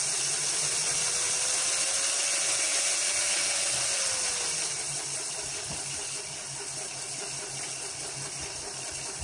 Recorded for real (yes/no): yes